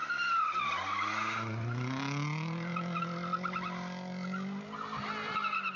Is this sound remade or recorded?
recorded